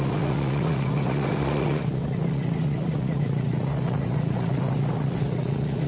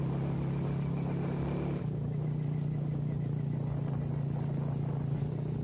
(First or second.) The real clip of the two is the second